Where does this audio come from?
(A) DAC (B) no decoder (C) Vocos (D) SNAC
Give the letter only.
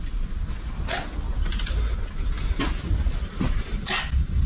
B